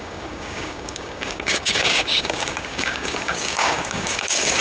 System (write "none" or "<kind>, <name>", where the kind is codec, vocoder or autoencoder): codec, DAC